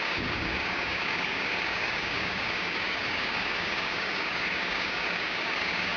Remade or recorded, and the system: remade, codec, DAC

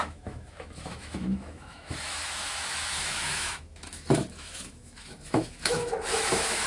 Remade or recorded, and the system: remade, autoencoder, DAC-VAE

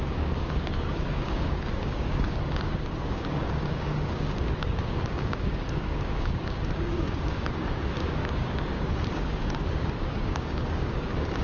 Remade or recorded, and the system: remade, codec, DAC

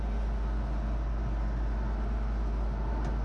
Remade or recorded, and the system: recorded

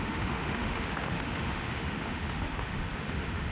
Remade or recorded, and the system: remade, autoencoder, DAC-VAE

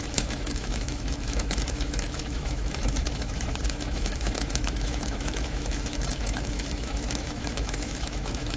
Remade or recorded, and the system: remade, autoencoder, DAC-VAE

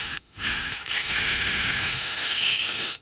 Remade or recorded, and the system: remade, autoencoder, DAC-VAE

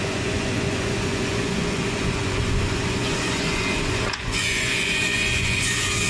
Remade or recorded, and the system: remade, vocoder, Vocos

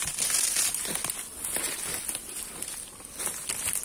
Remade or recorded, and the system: recorded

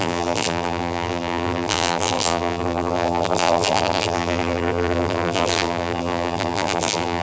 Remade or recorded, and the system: remade, vocoder, BigVGAN v2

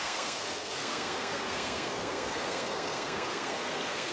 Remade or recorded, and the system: remade, codec, SNAC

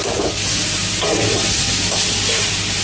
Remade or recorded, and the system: recorded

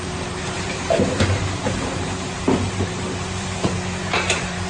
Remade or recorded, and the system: remade, vocoder, BigVGAN v2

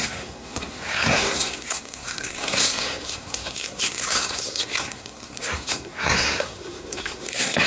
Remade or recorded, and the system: remade, codec, SNAC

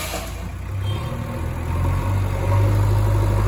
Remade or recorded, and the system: recorded